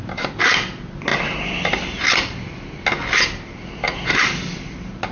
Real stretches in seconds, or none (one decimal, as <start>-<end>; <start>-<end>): 0.0-5.1